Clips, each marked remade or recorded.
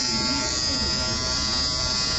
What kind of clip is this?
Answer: recorded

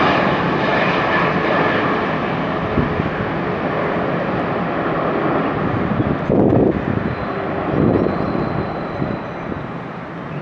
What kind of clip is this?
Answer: recorded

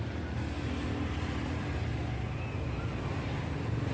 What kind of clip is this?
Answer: recorded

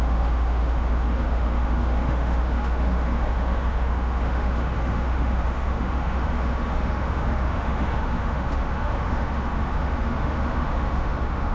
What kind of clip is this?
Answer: remade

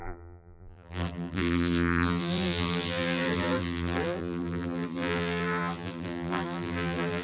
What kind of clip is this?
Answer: remade